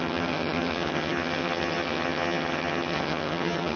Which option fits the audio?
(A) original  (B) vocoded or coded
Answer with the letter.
B